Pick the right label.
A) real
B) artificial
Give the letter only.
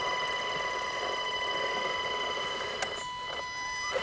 A